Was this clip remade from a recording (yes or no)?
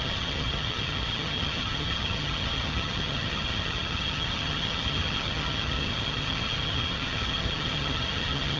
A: yes